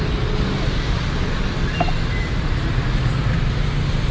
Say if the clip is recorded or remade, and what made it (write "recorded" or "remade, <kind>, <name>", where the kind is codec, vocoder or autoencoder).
recorded